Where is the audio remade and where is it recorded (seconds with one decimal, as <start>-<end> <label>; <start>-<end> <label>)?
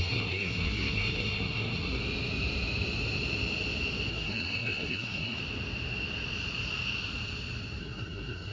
0.0-2.0 remade; 2.0-4.1 recorded; 4.1-5.4 remade; 5.4-7.8 recorded; 7.8-8.5 remade